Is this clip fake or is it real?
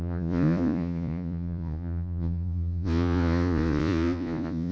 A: fake